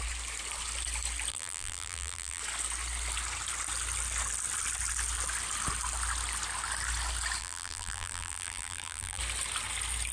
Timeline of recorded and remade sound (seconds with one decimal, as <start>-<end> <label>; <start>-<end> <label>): 0.0-1.3 recorded; 1.3-2.4 remade; 2.4-7.4 recorded; 7.4-9.2 remade; 9.2-10.1 recorded